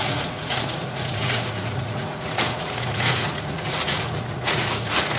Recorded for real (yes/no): no